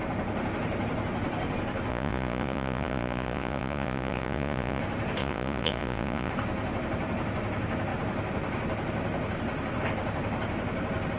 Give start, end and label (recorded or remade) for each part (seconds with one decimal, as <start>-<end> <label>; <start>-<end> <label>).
0.0-1.9 recorded; 1.9-4.8 remade; 4.8-5.2 recorded; 5.2-6.3 remade; 6.3-11.2 recorded